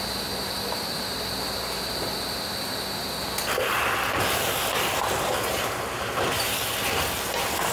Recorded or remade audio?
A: recorded